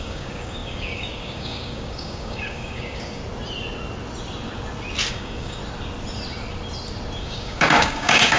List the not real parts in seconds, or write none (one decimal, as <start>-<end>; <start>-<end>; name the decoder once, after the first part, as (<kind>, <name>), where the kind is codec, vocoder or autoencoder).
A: 0.0-3.2 (codec, DAC); 5.1-5.6; 7.2-8.4